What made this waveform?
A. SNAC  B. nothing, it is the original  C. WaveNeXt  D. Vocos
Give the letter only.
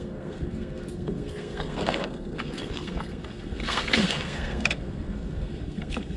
A